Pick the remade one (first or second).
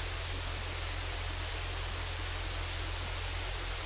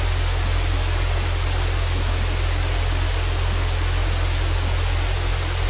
first